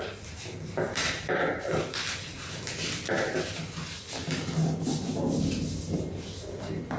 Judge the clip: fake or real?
real